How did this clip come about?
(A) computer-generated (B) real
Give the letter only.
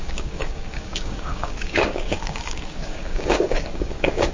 A